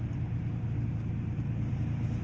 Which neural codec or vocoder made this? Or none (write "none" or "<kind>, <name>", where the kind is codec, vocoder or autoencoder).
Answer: none